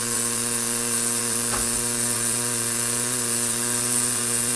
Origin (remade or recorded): remade